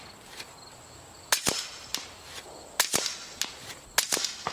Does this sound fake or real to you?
real